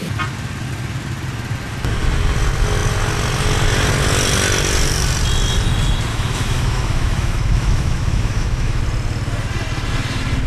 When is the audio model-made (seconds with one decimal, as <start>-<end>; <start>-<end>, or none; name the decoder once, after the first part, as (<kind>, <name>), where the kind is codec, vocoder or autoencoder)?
6.1-8.8 (autoencoder, DAC-VAE)